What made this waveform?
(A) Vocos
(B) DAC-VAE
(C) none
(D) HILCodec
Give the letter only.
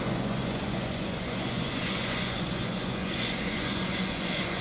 A